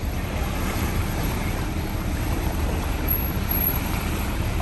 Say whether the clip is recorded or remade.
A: remade